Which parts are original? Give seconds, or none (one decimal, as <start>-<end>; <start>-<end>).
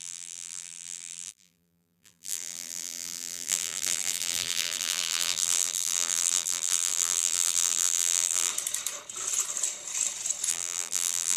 8.5-10.5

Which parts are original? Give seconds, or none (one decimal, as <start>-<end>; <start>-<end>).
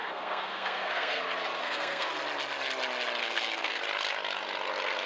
1.2-1.6; 2.1-3.2; 3.8-5.1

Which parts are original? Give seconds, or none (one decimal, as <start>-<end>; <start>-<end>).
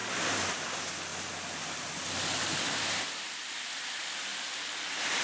0.0-5.2